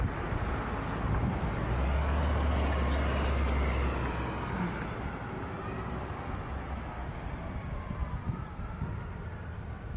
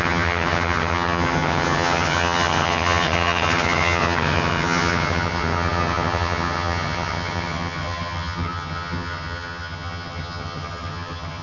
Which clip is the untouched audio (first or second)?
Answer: first